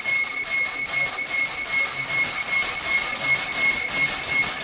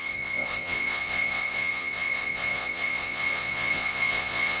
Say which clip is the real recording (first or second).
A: first